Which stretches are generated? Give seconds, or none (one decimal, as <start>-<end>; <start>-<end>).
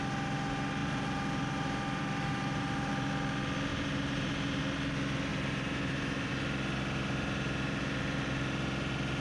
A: 0.8-2.9; 3.7-4.6; 5.3-6.3